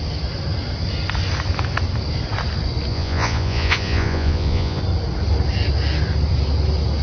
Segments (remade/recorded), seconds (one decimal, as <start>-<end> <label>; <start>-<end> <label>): 0.0-2.9 recorded; 2.9-4.8 remade; 4.8-7.0 recorded

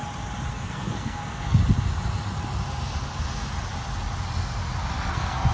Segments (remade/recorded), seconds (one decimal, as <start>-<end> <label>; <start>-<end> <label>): 0.0-0.5 recorded; 0.5-1.6 remade; 1.6-4.9 recorded; 4.9-5.5 remade

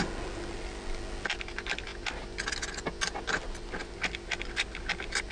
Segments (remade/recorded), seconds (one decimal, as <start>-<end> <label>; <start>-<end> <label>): 0.0-5.3 recorded

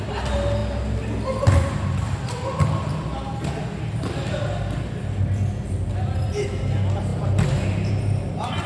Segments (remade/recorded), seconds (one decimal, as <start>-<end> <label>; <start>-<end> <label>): 0.0-8.7 recorded

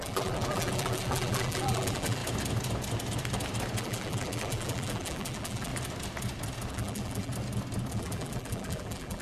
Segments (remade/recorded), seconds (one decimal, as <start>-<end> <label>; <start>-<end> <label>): 0.0-2.2 remade; 2.2-3.8 recorded; 3.8-5.7 remade; 5.7-6.7 recorded; 6.7-7.3 remade; 7.3-7.9 recorded; 7.9-9.2 remade

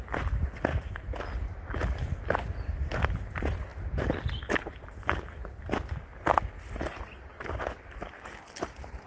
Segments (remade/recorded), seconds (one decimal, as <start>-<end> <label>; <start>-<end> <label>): 0.0-9.1 recorded

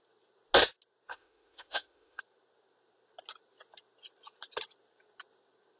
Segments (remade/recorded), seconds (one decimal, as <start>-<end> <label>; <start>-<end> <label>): 0.0-1.1 recorded; 1.1-2.2 remade; 2.2-5.8 recorded

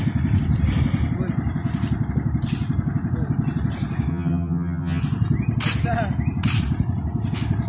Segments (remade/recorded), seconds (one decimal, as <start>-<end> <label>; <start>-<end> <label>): 0.0-4.1 recorded; 4.1-5.0 remade; 5.0-7.7 recorded